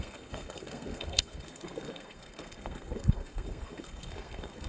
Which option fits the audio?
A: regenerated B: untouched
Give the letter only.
A